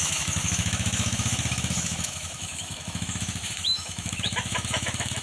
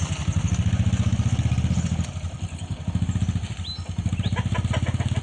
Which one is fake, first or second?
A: first